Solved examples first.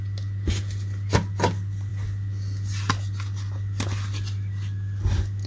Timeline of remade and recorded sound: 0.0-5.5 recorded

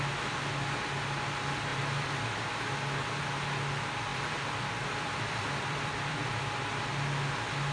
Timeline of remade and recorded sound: 0.0-1.7 recorded; 1.7-2.7 remade; 2.7-4.1 recorded; 4.1-6.8 remade; 6.8-7.7 recorded

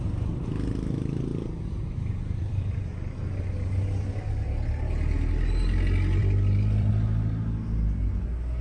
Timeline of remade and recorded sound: 0.0-1.3 recorded; 1.3-2.1 remade; 2.1-6.2 recorded; 6.2-6.9 remade; 6.9-8.6 recorded

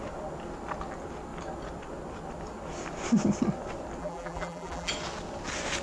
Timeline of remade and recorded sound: 0.0-4.0 recorded; 4.0-4.9 remade; 4.9-5.8 recorded

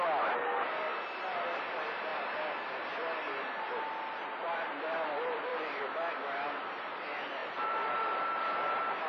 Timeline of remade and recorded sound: 0.0-5.5 recorded; 5.5-6.1 remade; 6.1-7.4 recorded; 7.4-8.3 remade; 8.3-9.1 recorded